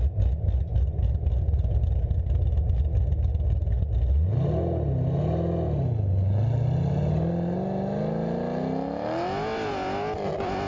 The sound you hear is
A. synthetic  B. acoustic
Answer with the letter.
B